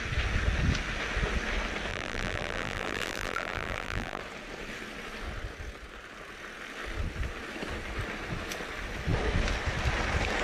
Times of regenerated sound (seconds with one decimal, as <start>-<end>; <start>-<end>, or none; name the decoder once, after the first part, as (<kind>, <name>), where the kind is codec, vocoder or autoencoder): 1.9-4.2 (vocoder, BigVGAN v2)